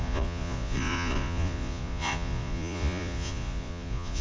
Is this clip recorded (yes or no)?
no